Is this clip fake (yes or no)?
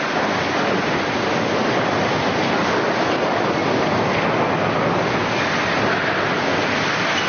no